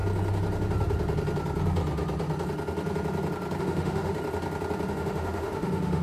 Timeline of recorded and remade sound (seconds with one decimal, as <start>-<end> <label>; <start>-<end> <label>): 0.0-3.6 recorded; 3.6-4.1 remade; 4.1-4.9 recorded; 4.9-6.0 remade